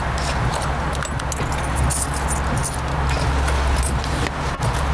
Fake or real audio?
real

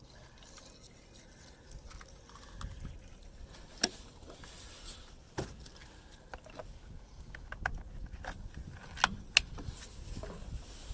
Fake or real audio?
real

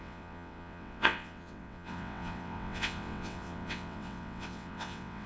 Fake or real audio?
fake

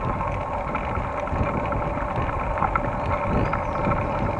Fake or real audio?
real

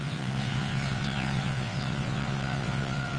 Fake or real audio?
fake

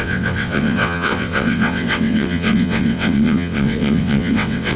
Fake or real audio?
fake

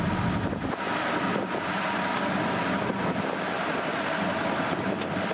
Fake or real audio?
real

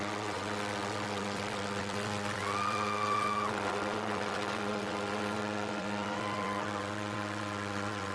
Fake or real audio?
fake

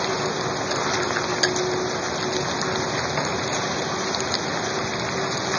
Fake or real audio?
real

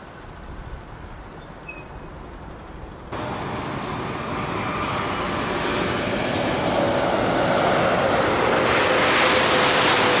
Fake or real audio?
real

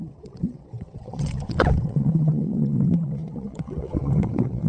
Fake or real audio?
fake